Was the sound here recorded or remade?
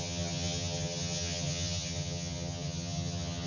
remade